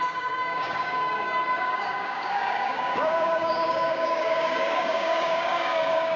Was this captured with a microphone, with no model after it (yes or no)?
no